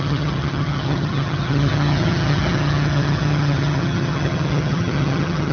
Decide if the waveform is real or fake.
fake